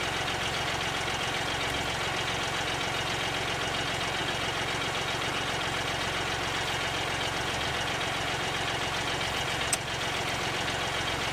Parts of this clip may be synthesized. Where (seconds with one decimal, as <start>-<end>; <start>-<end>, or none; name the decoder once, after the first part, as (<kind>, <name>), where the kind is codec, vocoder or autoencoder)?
none